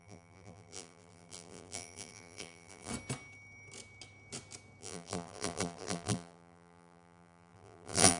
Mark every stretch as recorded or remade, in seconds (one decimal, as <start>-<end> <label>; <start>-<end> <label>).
0.0-2.9 remade; 2.9-4.8 recorded; 4.8-8.2 remade